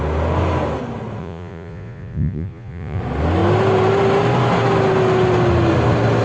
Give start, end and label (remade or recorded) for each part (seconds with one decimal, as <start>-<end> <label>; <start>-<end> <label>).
0.0-1.2 recorded; 1.2-3.0 remade; 3.0-6.2 recorded